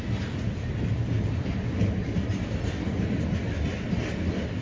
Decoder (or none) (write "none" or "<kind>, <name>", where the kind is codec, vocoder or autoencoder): none